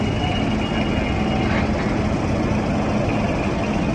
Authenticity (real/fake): real